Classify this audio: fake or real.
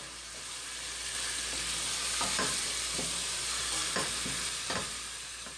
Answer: real